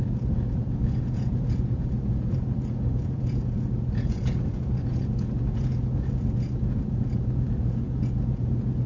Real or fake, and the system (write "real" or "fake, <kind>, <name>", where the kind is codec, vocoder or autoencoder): fake, vocoder, Vocos